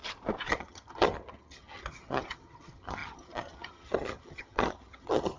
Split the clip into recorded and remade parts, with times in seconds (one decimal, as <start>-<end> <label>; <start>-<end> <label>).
0.0-0.5 recorded; 0.5-5.4 remade